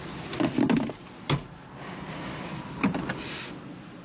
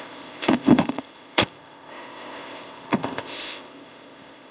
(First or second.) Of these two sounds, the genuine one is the first